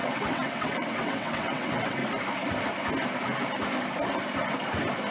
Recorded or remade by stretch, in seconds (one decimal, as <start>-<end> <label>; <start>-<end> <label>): 0.0-2.0 remade; 2.0-5.1 recorded